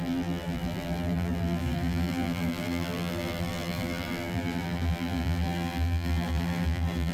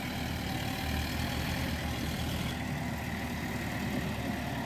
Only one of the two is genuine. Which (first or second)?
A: second